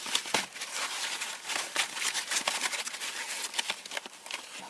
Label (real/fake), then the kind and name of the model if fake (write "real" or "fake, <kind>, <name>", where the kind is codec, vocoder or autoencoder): real